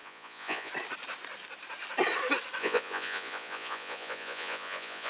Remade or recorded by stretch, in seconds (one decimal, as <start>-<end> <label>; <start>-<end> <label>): 0.0-0.7 remade; 0.7-2.6 recorded; 2.6-5.1 remade